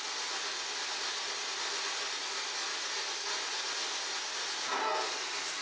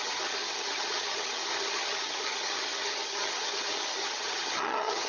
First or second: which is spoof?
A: second